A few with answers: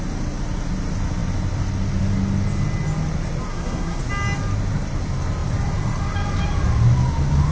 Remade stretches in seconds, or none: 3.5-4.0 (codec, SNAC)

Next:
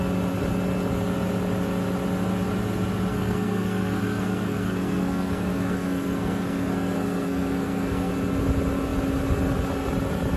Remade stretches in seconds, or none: 3.1-8.1 (codec, SNAC)

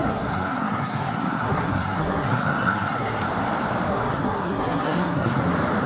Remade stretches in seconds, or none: 0.0-3.2 (codec, SNAC); 3.9-5.4

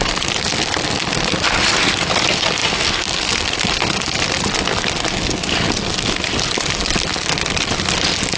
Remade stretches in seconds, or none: none